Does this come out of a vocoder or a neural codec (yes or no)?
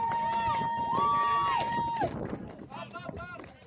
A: no